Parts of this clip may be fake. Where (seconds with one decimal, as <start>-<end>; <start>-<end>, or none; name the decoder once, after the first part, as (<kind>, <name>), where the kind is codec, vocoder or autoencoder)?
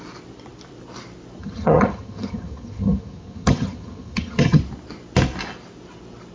1.4-4.6 (vocoder, HiFi-GAN)